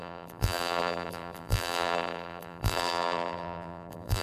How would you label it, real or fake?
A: fake